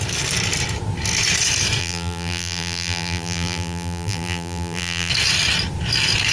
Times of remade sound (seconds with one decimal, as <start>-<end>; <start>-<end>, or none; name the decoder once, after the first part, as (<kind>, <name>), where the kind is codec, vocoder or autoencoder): 1.8-5.1 (vocoder, BigVGAN v2)